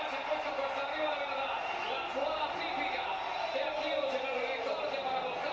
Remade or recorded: recorded